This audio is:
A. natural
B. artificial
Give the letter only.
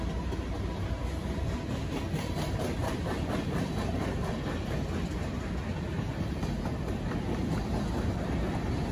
A